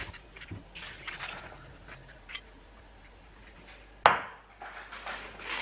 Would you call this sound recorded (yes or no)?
yes